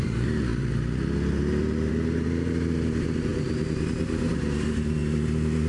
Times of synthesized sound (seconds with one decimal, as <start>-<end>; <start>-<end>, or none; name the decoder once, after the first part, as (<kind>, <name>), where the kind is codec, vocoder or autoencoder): 0.0-0.5 (vocoder, BigVGAN v2); 1.9-5.0